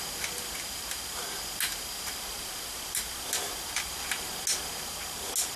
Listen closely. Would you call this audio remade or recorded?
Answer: recorded